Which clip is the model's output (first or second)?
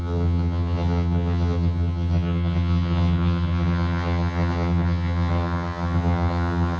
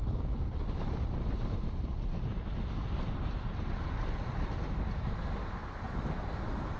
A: first